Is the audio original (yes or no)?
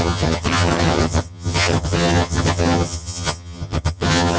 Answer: no